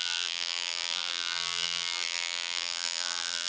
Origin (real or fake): fake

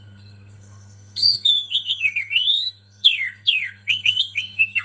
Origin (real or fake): fake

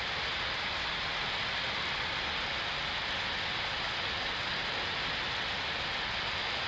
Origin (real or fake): real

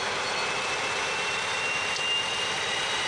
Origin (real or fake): real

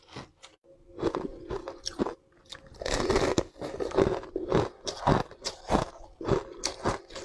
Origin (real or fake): real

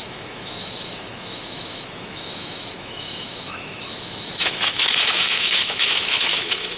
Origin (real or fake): fake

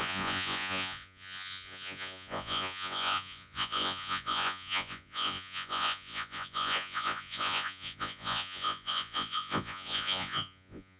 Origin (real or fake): fake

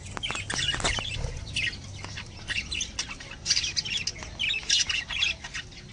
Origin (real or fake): real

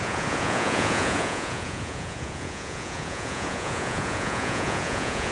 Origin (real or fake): fake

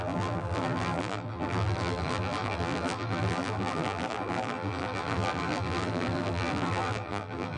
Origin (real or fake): fake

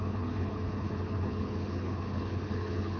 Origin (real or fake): fake